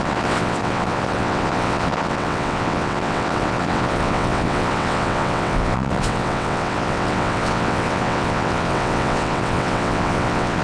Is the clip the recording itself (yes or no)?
no